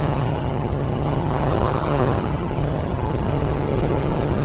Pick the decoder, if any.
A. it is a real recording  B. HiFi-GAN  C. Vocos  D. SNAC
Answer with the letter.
B